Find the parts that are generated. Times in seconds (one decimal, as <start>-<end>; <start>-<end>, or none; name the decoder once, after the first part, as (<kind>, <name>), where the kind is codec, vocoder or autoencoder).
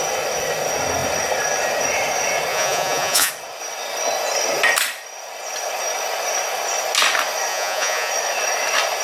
2.5-3.3 (vocoder, Vocos); 7.5-8.1